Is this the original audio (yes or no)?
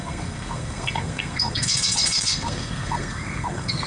no